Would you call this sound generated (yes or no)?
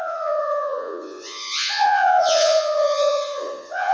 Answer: yes